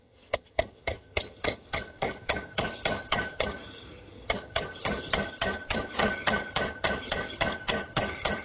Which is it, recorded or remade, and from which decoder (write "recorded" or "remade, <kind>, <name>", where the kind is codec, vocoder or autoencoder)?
remade, vocoder, HiFi-GAN